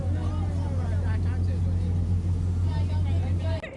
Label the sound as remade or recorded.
recorded